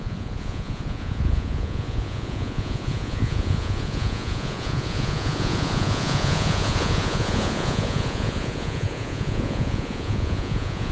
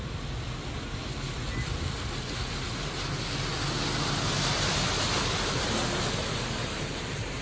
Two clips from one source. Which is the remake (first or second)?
first